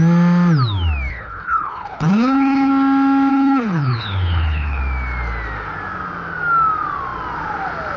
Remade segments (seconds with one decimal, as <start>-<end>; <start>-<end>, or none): 1.1-2.7; 3.3-4.8

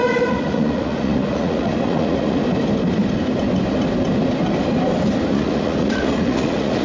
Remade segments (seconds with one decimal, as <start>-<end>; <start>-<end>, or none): 0.0-2.4; 5.3-6.8

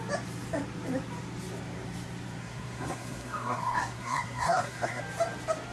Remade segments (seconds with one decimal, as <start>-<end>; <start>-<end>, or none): 2.4-5.0

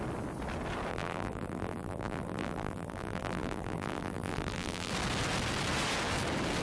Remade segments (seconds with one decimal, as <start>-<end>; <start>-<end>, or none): 0.9-4.9

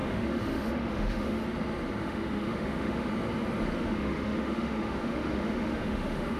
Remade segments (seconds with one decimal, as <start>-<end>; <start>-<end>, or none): 0.0-1.4; 2.0-3.1; 3.8-6.4

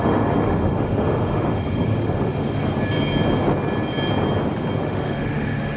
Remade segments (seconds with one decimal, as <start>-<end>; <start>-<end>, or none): 0.0-2.6; 4.8-5.8